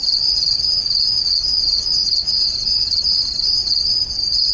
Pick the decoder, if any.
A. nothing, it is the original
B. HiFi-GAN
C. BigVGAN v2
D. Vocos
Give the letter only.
A